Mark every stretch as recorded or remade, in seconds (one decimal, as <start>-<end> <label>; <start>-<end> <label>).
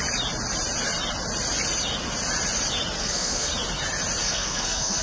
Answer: 0.0-3.0 recorded; 3.0-3.5 remade; 3.5-4.2 recorded; 4.2-5.0 remade